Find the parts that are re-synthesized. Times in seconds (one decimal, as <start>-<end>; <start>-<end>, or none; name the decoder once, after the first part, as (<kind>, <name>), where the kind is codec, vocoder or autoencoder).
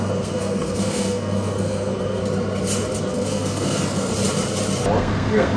0.0-2.2 (codec, SNAC); 3.0-4.1; 5.0-5.6